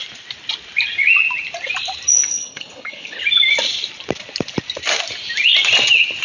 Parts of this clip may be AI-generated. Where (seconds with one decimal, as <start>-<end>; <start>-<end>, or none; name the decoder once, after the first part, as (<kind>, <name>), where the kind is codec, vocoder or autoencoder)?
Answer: 2.3-3.2 (codec, HILCodec)